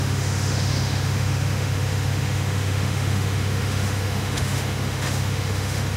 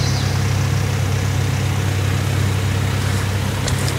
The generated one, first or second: first